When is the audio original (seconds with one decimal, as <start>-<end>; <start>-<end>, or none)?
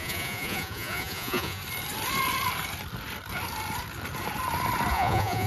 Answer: 1.6-4.9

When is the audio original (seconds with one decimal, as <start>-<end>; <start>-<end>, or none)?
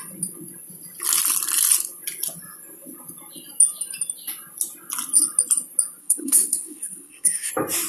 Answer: 0.0-6.0; 7.5-7.9